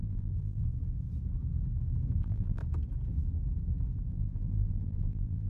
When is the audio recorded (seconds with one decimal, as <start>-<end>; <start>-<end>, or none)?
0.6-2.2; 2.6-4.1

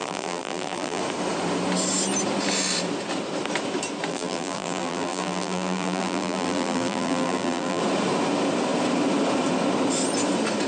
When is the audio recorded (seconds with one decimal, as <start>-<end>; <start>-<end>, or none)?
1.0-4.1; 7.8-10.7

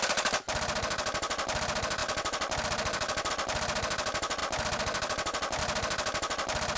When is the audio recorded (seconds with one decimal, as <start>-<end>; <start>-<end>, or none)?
0.0-6.8

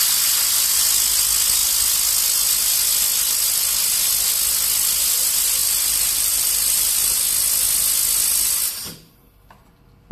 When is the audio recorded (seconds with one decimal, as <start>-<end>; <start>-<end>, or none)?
0.0-5.6; 7.2-10.1

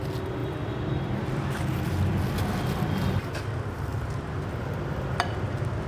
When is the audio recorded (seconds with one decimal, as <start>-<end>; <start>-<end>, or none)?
0.0-0.4; 1.5-3.9; 5.4-5.9

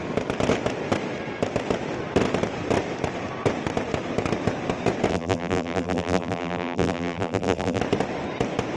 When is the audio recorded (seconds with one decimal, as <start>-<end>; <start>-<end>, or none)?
0.0-5.1; 7.8-8.8

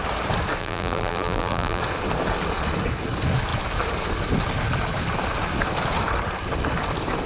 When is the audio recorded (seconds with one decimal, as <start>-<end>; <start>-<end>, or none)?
0.0-0.6; 1.8-7.3

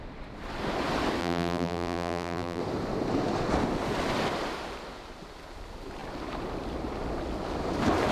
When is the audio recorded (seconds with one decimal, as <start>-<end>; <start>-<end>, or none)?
0.0-1.2; 2.6-8.1